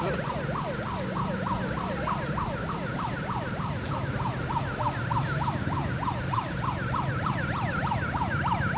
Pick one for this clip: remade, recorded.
recorded